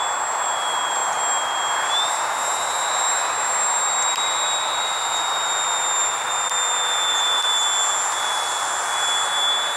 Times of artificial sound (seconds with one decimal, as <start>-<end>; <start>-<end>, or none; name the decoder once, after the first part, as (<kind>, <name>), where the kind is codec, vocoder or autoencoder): none